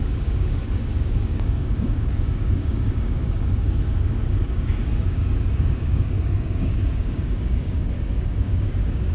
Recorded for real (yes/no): no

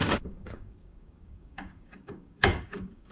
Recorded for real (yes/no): no